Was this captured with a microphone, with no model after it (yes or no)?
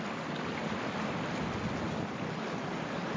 yes